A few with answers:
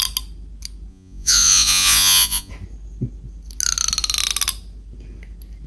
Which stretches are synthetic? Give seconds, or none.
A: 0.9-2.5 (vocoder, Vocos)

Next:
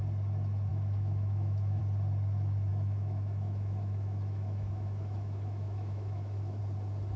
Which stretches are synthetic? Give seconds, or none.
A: 0.7-1.8 (autoencoder, DAC-VAE); 2.7-6.6